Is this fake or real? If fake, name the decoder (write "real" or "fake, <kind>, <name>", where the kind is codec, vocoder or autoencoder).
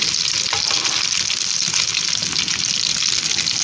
real